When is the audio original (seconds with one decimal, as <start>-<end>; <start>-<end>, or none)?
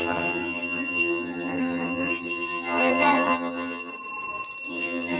3.9-4.7